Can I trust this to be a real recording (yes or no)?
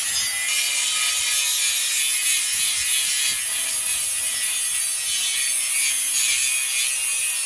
yes